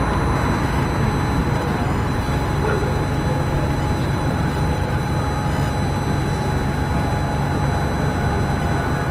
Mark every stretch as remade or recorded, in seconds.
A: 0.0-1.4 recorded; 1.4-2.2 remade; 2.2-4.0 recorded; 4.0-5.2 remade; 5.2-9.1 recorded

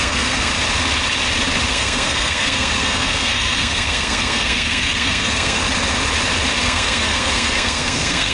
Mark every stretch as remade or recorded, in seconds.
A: 0.0-0.5 remade; 0.5-1.7 recorded; 1.7-5.6 remade; 5.6-6.6 recorded; 6.6-8.3 remade

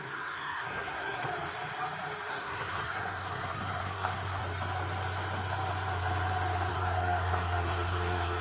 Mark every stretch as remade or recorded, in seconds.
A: 0.0-1.3 remade; 1.3-2.3 recorded; 2.3-4.4 remade; 4.4-6.7 recorded; 6.7-8.4 remade

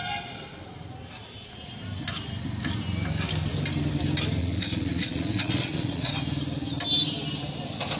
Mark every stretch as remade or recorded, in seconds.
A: 0.0-4.4 recorded; 4.4-6.1 remade; 6.1-8.0 recorded

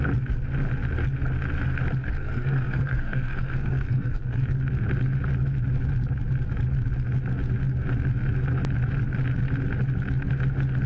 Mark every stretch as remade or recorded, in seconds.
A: 0.0-2.0 recorded; 2.0-4.5 remade; 4.5-10.9 recorded

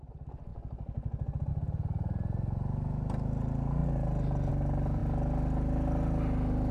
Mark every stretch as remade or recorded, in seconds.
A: 0.0-6.7 recorded

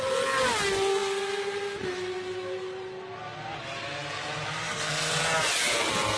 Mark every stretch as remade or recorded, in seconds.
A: 0.0-4.6 recorded; 4.6-5.1 remade; 5.1-6.2 recorded